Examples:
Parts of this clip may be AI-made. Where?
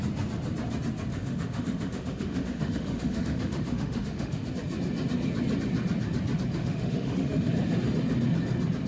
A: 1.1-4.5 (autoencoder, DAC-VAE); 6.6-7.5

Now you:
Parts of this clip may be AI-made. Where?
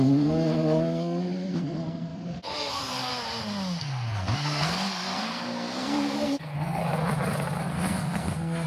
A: 0.0-3.1 (codec, SNAC); 3.8-6.8; 7.6-8.7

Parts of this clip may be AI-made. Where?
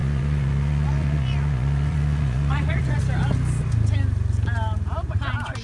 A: 0.0-3.0 (vocoder, Vocos)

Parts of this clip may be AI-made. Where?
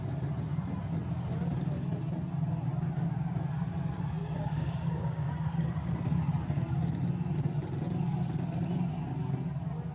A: 4.2-5.3 (codec, DAC)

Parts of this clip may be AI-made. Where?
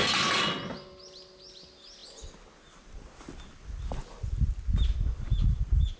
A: none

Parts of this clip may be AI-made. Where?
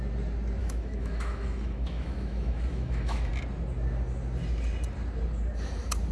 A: 0.6-3.3 (autoencoder, DAC-VAE)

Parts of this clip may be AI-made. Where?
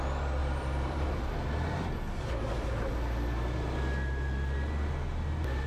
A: 0.4-1.3 (vocoder, BigVGAN v2)